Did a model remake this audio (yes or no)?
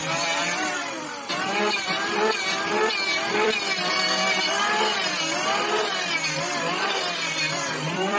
yes